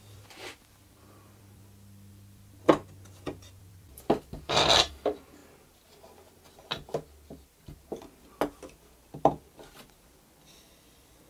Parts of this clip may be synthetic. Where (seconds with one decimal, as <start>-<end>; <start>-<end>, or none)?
0.0-1.6; 2.1-2.8; 3.6-5.4; 9.1-11.3